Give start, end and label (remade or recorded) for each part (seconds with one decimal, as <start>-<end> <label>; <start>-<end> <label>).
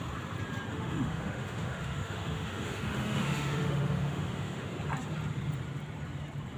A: 0.0-0.7 recorded; 0.7-4.7 remade; 4.7-6.6 recorded